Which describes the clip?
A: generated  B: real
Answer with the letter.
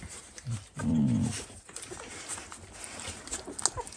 B